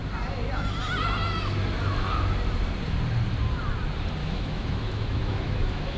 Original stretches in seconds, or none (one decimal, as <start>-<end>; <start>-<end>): 0.0-4.2